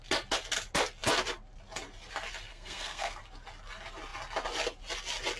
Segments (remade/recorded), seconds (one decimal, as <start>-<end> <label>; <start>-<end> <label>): 0.0-2.5 recorded; 2.5-3.2 remade; 3.2-5.4 recorded